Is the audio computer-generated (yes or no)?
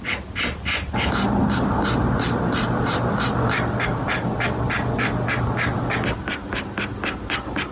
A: no